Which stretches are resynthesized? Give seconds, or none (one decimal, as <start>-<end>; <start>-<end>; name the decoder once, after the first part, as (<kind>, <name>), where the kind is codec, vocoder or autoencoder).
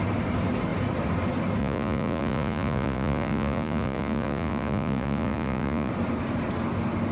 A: 1.6-5.9 (vocoder, Vocos)